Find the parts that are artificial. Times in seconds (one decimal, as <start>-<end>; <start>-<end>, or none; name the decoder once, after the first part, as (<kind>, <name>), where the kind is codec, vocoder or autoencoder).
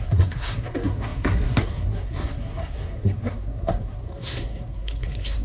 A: 0.0-5.4 (codec, SNAC)